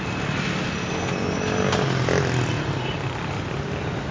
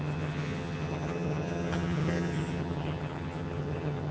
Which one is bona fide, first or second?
first